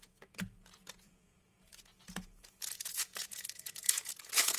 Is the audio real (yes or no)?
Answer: no